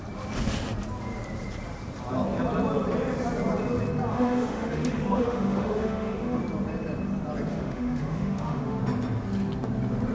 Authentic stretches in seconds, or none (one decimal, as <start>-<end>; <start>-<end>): 0.0-4.1; 6.4-7.5; 8.8-10.1

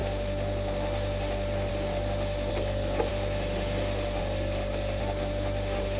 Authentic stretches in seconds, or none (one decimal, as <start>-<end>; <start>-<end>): 2.5-3.1; 4.2-5.0

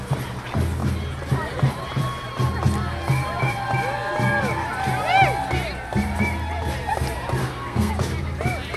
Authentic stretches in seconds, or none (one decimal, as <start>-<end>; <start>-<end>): 0.0-7.4; 7.9-8.8

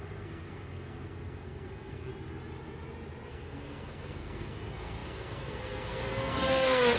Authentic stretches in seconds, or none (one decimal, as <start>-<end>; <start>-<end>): 2.1-3.3

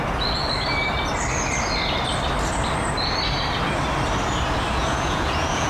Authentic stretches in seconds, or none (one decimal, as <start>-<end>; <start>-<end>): 0.0-4.8

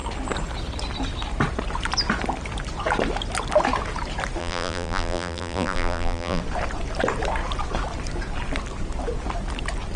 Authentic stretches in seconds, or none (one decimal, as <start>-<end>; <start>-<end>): 0.0-4.4; 6.4-10.0

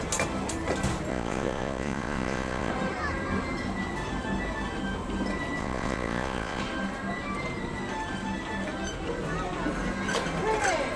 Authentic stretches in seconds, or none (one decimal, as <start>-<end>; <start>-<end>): 0.0-1.1; 2.7-5.6; 6.6-11.0

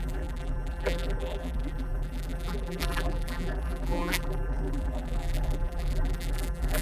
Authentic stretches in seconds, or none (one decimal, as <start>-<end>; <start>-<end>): none